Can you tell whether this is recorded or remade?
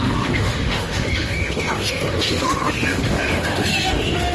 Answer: remade